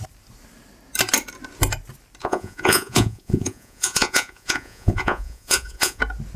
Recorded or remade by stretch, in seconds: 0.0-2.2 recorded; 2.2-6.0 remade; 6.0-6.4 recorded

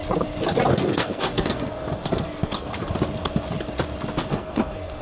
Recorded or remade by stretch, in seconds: 0.0-0.7 recorded; 0.7-2.9 remade; 2.9-4.2 recorded; 4.2-5.0 remade

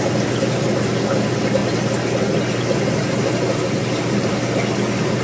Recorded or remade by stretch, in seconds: 0.0-5.2 recorded

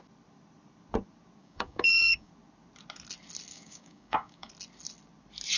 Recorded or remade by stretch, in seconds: 0.0-1.4 recorded; 1.4-2.3 remade; 2.3-3.5 recorded; 3.5-4.5 remade; 4.5-5.6 recorded

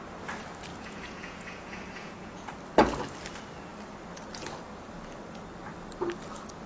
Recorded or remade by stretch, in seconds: 0.0-0.7 recorded; 0.7-2.5 remade; 2.5-6.7 recorded